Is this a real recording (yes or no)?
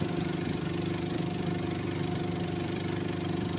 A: no